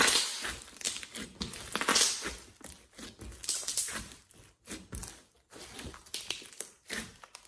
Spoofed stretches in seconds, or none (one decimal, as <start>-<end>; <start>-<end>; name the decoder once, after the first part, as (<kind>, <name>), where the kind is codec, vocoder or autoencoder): 3.4-4.2 (vocoder, BigVGAN v2)